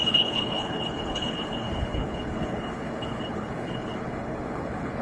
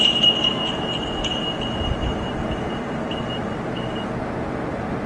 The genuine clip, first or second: second